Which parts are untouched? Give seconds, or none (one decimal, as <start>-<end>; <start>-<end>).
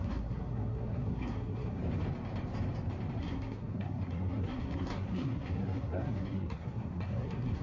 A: 1.8-3.2